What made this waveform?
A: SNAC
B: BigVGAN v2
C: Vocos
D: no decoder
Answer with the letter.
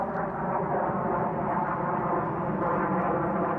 D